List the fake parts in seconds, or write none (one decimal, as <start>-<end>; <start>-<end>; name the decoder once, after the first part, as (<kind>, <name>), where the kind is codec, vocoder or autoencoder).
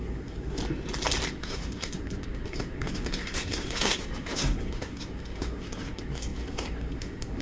0.0-0.6 (codec, SNAC); 1.3-7.4